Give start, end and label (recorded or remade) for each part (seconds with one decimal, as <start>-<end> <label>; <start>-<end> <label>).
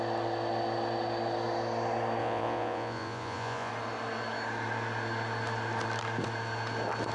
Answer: 0.0-2.2 recorded; 2.2-3.7 remade; 3.7-7.1 recorded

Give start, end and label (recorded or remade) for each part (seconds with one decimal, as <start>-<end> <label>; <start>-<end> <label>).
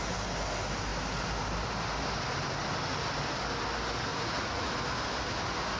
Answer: 0.0-4.1 recorded; 4.1-4.7 remade; 4.7-5.8 recorded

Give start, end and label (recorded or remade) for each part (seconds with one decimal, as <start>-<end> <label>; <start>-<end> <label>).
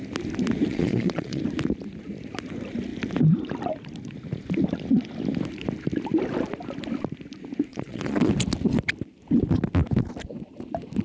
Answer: 0.0-0.7 recorded; 0.7-1.4 remade; 1.4-7.7 recorded; 7.7-8.3 remade; 8.3-11.0 recorded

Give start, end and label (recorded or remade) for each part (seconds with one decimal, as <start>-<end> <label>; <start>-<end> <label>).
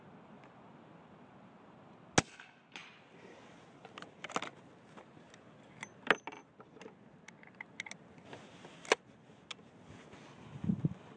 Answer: 0.0-11.2 recorded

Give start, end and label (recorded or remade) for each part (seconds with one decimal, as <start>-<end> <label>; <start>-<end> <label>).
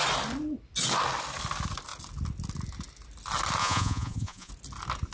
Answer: 0.0-3.6 recorded; 3.6-4.5 remade; 4.5-5.1 recorded